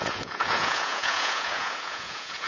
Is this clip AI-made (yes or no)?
yes